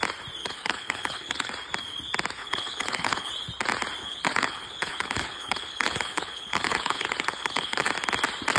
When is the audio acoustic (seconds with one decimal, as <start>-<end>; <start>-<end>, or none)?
0.0-0.4; 1.5-2.4; 3.3-4.0; 7.9-8.6

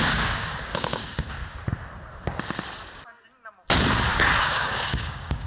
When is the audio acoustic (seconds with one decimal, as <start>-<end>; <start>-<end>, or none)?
1.4-4.4